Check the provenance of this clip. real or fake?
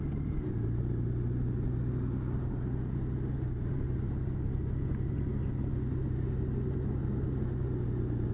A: real